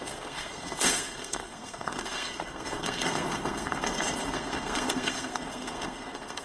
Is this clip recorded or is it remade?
remade